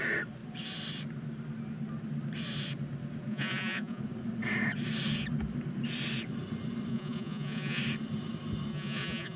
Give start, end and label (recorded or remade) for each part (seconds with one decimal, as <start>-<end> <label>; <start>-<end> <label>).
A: 0.0-3.3 recorded; 3.3-4.0 remade; 4.0-6.9 recorded; 6.9-7.8 remade; 7.8-8.7 recorded; 8.7-9.4 remade